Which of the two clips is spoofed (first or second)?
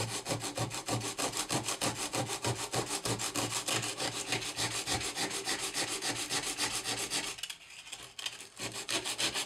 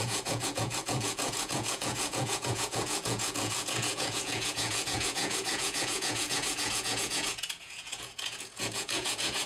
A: second